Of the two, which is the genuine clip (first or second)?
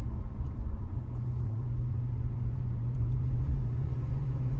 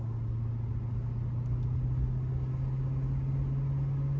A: second